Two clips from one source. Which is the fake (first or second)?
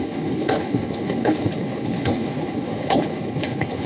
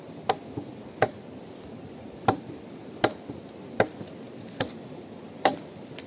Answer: first